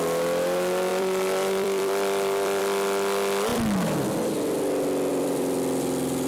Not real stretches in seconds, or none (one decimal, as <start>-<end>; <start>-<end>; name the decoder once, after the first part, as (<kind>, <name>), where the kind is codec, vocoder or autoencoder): 0.9-2.6 (vocoder, BigVGAN v2); 5.1-6.3